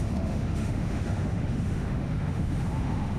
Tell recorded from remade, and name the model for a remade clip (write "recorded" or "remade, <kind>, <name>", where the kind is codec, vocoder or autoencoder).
remade, autoencoder, DAC-VAE